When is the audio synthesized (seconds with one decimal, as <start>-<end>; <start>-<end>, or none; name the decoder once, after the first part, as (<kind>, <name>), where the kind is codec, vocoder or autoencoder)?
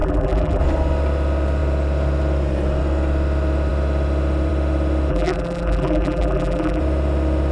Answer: 0.0-0.6 (vocoder, BigVGAN v2); 5.1-6.8